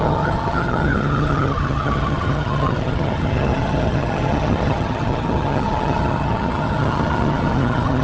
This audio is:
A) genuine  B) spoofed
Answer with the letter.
B